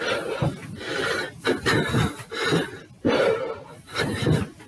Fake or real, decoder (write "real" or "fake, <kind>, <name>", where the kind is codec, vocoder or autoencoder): fake, vocoder, BigVGAN v2